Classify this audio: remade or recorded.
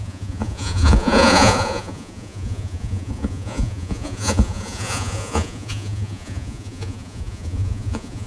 remade